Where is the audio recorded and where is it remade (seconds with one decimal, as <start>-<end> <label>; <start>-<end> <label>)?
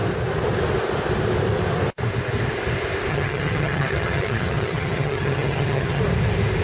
0.0-3.1 recorded; 3.1-6.0 remade; 6.0-6.6 recorded